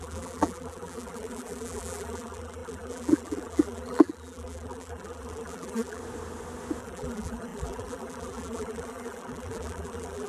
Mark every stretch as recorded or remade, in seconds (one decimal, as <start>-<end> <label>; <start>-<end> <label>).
0.0-6.0 remade; 6.0-6.8 recorded; 6.8-10.3 remade